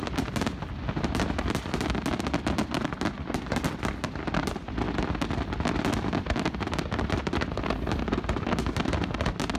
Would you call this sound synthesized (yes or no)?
no